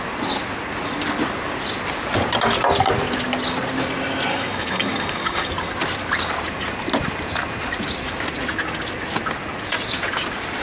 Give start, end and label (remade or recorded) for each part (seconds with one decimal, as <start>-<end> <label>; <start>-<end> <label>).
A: 0.0-4.3 recorded; 4.3-5.5 remade; 5.5-10.6 recorded